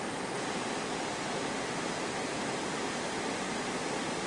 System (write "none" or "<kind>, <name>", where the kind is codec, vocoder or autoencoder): none